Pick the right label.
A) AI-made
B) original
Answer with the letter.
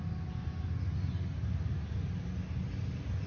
B